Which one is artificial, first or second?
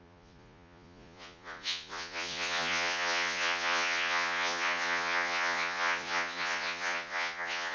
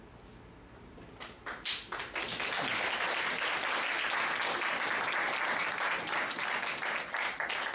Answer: first